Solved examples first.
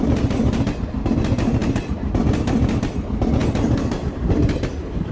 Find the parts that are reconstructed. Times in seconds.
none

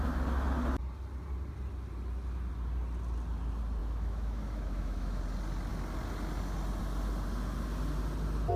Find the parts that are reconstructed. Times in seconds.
3.8-5.2 (autoencoder, DAC-VAE)

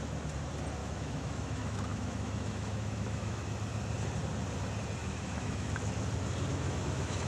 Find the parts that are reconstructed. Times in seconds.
0.8-3.4 (autoencoder, DAC-VAE); 5.0-5.7; 6.5-7.3